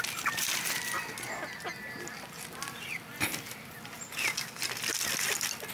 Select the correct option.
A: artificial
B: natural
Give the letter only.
B